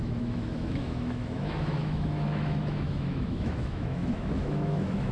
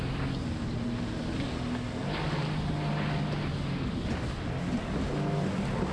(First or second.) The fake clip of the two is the first